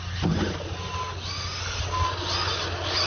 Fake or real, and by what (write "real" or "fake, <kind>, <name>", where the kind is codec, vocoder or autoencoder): real